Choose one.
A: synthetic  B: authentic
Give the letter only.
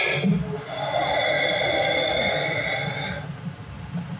B